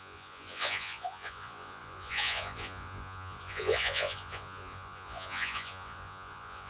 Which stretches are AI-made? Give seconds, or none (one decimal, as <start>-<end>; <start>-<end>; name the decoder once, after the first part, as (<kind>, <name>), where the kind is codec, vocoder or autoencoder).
0.0-6.7 (vocoder, Vocos)